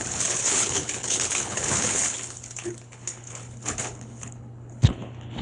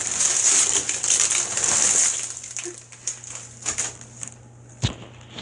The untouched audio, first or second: second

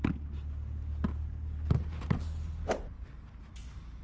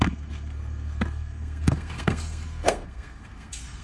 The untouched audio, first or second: first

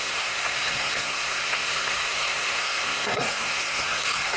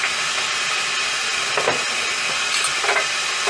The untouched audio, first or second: second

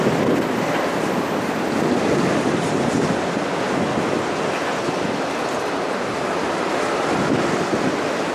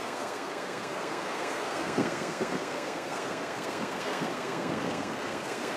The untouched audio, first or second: first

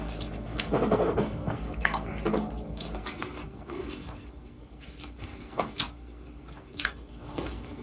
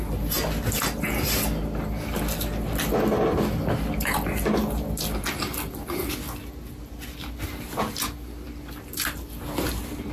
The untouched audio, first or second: second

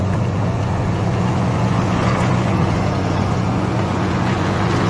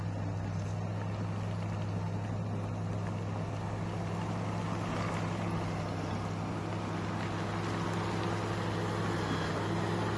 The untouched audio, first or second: second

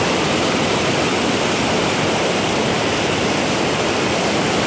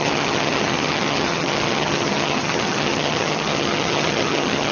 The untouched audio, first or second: first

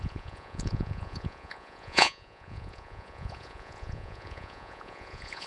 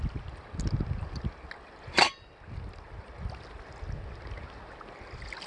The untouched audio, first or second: second